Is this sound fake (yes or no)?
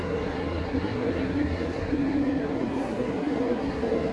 yes